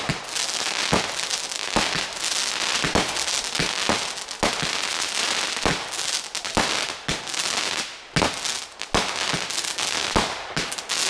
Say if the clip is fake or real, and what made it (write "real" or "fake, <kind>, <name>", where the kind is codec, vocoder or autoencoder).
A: real